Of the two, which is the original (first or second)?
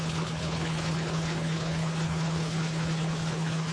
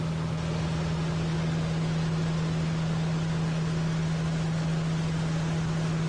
second